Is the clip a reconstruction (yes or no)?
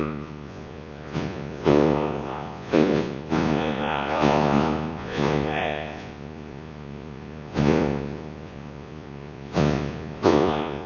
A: yes